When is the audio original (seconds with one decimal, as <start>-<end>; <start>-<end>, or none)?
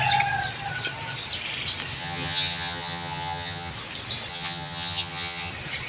0.0-2.0; 3.7-4.3; 5.5-5.9